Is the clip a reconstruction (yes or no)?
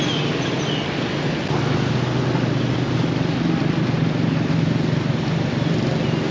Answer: no